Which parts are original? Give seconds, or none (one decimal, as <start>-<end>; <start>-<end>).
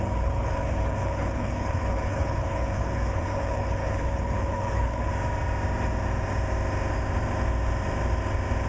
5.1-8.7